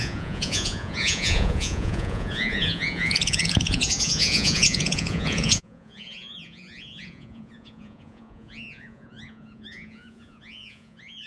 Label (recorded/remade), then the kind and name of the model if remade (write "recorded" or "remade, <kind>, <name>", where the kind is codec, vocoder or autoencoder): remade, vocoder, Vocos